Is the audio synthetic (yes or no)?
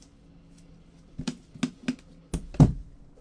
no